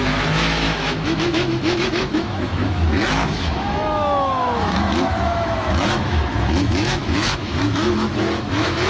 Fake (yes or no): yes